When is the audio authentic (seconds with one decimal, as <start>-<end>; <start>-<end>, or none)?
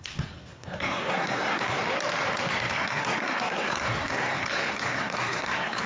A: 1.8-2.5